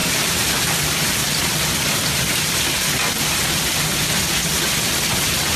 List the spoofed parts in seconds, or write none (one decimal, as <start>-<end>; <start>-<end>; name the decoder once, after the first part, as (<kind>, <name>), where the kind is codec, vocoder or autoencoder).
0.0-0.7 (vocoder, BigVGAN v2)